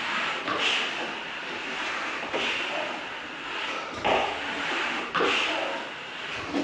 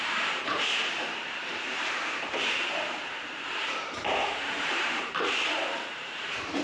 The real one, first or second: first